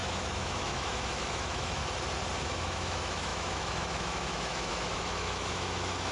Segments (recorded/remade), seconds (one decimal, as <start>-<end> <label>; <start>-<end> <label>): 0.0-1.8 remade; 1.8-2.4 recorded; 2.4-6.1 remade